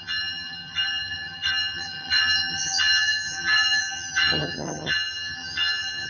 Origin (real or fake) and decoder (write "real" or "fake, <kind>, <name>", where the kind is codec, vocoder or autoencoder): fake, vocoder, HiFi-GAN